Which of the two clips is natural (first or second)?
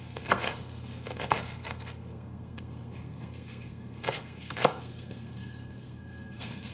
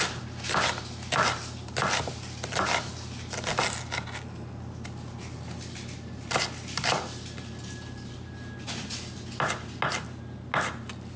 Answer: second